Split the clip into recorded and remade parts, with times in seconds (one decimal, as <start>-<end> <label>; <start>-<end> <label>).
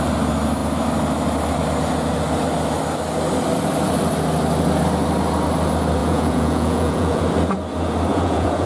0.0-6.0 recorded; 6.0-7.2 remade; 7.2-8.1 recorded; 8.1-8.7 remade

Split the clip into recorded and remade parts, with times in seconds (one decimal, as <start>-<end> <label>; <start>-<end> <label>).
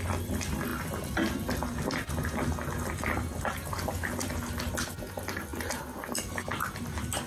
0.0-7.3 recorded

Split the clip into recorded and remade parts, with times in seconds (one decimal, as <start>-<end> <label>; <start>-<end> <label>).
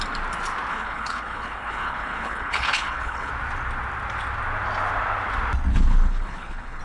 0.0-0.7 recorded; 0.7-3.3 remade; 3.3-5.7 recorded; 5.7-6.8 remade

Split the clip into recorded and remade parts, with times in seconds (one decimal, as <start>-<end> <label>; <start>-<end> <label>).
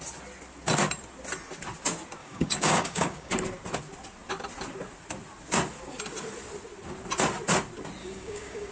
0.0-2.2 recorded; 2.2-3.3 remade; 3.3-8.0 recorded; 8.0-8.7 remade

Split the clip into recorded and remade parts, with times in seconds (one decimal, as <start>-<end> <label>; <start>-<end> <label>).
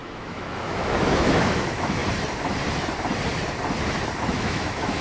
0.0-2.0 remade; 2.0-4.2 recorded; 4.2-5.0 remade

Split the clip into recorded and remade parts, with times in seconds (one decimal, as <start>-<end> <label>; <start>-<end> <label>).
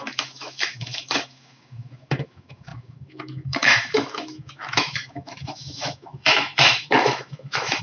0.0-7.8 remade